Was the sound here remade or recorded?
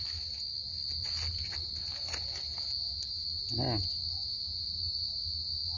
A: recorded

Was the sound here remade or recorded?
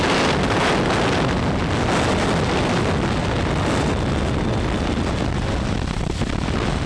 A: recorded